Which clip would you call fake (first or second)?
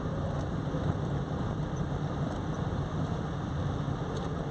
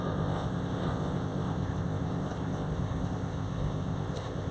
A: second